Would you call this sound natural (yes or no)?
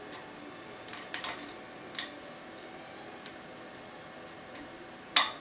yes